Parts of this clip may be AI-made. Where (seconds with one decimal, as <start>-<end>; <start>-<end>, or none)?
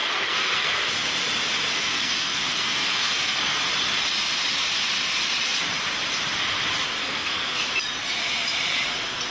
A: 0.0-0.8; 1.7-3.6; 7.0-7.7